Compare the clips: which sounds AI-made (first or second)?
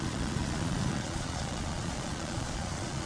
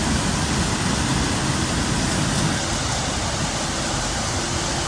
first